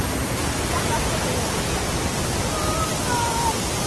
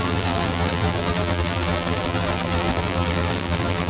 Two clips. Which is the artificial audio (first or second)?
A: second